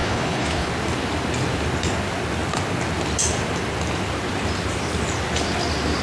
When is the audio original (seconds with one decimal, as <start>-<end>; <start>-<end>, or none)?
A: 0.7-6.0